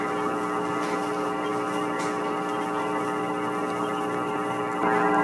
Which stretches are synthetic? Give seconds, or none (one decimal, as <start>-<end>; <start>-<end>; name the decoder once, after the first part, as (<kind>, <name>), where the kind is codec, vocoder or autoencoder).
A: none

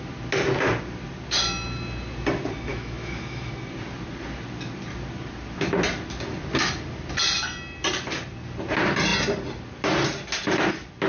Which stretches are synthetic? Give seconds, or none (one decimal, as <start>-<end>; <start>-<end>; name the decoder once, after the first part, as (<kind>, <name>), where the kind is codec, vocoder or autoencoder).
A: 2.7-3.5 (autoencoder, DAC-VAE)

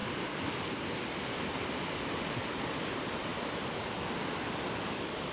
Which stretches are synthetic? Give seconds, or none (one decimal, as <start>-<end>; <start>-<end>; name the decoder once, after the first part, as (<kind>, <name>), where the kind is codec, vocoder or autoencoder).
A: none

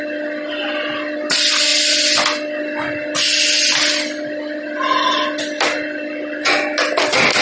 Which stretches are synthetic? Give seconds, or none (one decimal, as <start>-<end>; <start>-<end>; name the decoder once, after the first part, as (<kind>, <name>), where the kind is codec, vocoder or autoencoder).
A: none

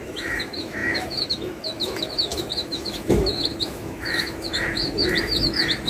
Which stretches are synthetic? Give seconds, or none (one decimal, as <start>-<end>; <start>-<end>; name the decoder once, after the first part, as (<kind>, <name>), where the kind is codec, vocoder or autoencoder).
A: 0.0-5.9 (autoencoder, DAC-VAE)

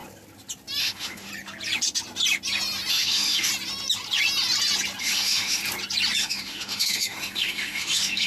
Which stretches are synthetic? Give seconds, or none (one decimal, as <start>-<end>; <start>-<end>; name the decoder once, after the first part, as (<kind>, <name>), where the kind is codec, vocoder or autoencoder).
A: 0.8-1.3 (autoencoder, DAC-VAE); 2.9-3.5; 5.0-5.6; 6.2-8.3

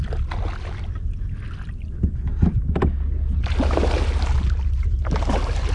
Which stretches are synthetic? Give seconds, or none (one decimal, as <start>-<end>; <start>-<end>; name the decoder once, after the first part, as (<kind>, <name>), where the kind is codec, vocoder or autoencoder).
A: none